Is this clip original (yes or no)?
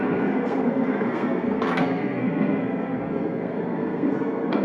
no